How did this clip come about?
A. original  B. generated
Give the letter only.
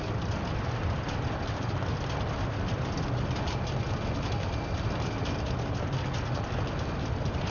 A